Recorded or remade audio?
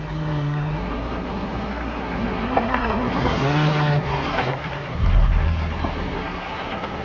remade